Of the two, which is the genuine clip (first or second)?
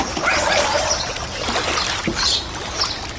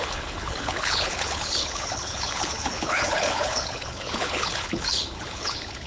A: first